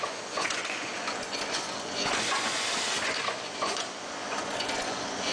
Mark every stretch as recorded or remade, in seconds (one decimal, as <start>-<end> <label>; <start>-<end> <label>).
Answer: 0.0-5.3 remade